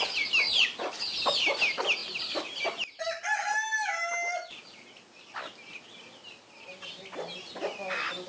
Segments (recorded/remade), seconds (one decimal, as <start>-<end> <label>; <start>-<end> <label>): 0.0-8.3 recorded